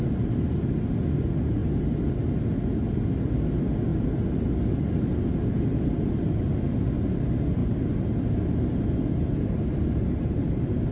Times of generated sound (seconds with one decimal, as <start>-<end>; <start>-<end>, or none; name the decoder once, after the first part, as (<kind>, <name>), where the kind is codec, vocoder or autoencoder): none